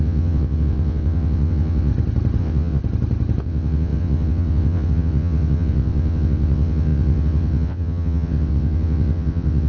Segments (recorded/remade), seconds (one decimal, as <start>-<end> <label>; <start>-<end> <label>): 0.0-1.9 remade; 1.9-2.4 recorded; 2.4-2.8 remade; 2.8-3.4 recorded; 3.4-9.7 remade